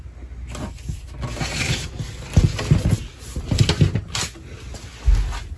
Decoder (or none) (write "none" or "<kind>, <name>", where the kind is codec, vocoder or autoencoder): none